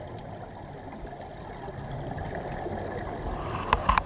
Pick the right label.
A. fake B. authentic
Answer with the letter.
B